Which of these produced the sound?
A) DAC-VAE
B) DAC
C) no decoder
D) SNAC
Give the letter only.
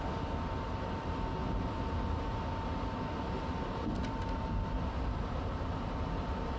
C